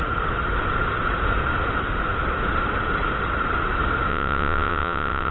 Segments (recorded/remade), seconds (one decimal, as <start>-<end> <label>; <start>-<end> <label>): 0.0-4.1 recorded; 4.1-5.3 remade